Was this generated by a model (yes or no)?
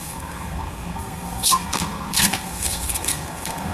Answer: yes